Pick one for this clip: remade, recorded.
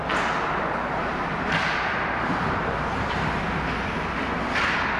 recorded